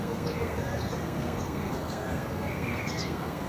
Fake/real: fake